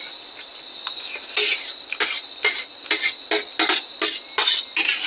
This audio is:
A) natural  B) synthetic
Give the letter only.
A